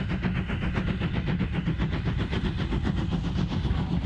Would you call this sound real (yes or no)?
yes